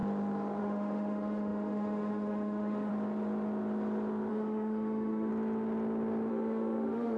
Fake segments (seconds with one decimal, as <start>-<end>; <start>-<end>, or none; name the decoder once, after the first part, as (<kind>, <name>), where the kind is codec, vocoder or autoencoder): 0.6-2.9 (autoencoder, DAC-VAE); 4.3-5.3; 6.3-7.2